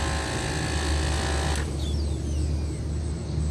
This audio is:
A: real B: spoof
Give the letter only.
A